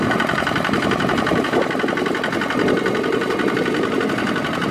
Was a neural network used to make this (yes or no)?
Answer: no